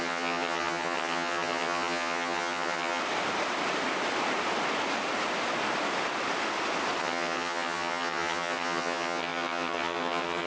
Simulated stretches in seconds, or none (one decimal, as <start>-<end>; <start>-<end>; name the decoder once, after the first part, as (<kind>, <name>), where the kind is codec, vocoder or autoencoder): 0.0-3.0 (vocoder, HiFi-GAN); 7.0-10.5